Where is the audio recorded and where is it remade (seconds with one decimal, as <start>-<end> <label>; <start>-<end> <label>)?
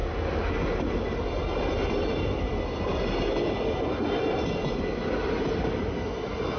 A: 0.0-6.6 recorded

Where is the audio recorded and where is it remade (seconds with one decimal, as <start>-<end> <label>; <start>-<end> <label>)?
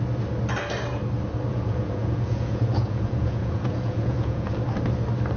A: 0.0-1.5 recorded; 1.5-4.5 remade; 4.5-5.4 recorded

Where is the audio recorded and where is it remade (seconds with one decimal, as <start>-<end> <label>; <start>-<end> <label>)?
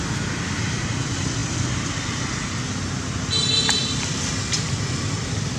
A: 0.0-5.6 recorded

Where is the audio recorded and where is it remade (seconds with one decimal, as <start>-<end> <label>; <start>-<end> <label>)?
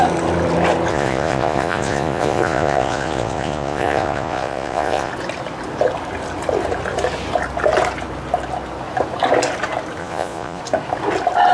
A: 0.0-0.9 recorded; 0.9-5.1 remade; 5.1-10.0 recorded; 10.0-10.6 remade; 10.6-11.5 recorded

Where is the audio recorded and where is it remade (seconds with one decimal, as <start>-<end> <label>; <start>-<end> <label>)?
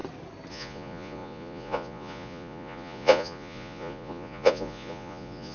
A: 0.0-0.5 recorded; 0.5-5.5 remade